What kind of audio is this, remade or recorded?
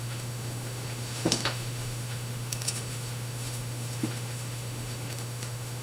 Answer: remade